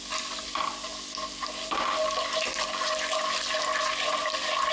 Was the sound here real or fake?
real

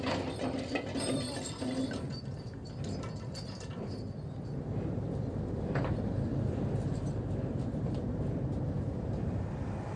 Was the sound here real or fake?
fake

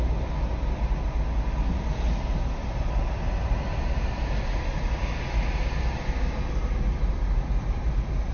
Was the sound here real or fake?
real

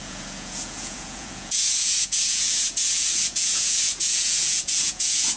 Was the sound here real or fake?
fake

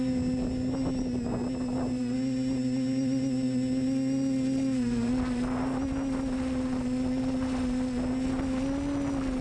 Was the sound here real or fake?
real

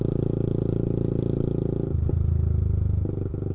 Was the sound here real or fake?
real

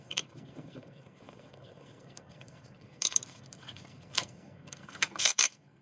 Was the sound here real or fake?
fake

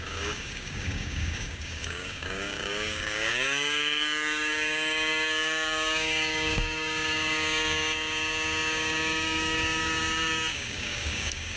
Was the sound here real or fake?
fake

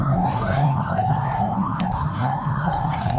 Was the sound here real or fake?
fake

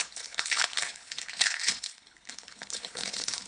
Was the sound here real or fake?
fake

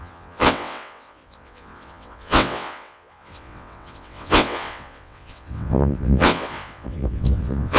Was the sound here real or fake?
fake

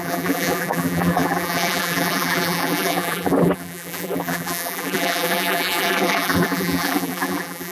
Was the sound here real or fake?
fake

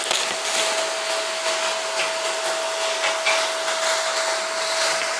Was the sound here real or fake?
real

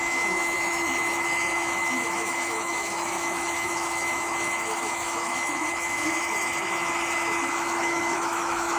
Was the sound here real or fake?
fake